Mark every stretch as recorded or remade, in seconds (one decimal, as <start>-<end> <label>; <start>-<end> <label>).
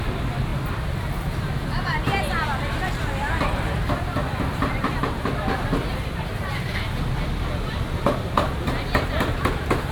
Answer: 0.0-5.9 remade; 5.9-7.1 recorded; 7.1-9.9 remade